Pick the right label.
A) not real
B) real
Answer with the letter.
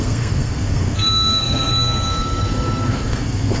A